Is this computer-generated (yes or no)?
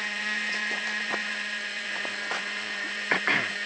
yes